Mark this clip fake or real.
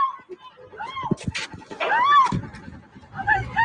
real